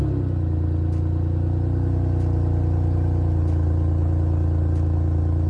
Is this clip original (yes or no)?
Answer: yes